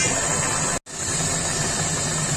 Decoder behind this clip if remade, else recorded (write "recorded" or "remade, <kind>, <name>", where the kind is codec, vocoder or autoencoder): recorded